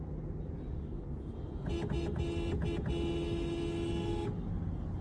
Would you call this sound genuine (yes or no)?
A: yes